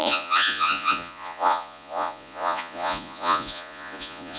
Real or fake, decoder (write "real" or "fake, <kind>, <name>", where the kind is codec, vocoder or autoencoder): fake, vocoder, Vocos